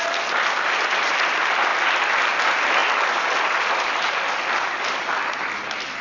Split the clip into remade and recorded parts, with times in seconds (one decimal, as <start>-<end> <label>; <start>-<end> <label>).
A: 0.0-6.0 recorded